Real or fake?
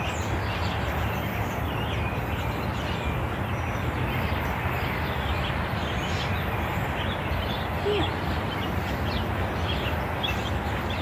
real